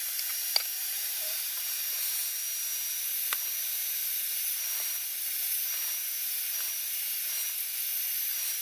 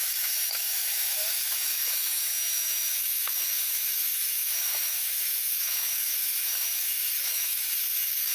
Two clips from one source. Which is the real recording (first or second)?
first